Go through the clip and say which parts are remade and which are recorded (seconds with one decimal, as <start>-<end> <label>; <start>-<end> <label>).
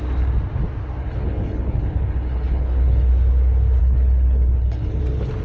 0.0-1.0 recorded; 1.0-3.1 remade; 3.1-3.8 recorded; 3.8-5.0 remade; 5.0-5.4 recorded